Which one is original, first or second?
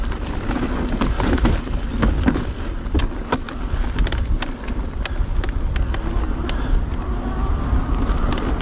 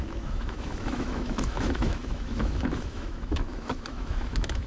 first